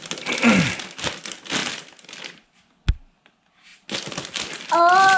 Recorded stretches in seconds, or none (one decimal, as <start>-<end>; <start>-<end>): 0.0-1.6; 2.3-5.2